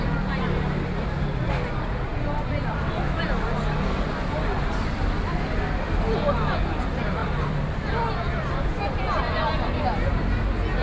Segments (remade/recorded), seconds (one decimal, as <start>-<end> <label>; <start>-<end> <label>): 0.0-7.2 recorded; 7.2-8.8 remade; 8.8-10.8 recorded